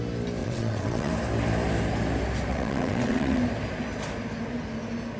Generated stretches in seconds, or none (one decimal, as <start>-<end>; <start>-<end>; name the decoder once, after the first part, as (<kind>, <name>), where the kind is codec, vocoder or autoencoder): 0.4-1.1 (vocoder, WaveNeXt); 2.5-3.4